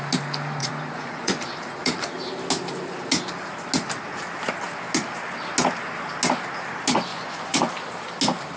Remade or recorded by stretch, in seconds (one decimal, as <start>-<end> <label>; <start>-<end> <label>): 0.0-0.6 recorded; 0.6-1.4 remade; 1.4-7.1 recorded; 7.1-7.7 remade; 7.7-8.6 recorded